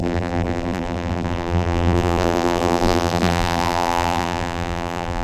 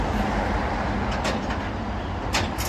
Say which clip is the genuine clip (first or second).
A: second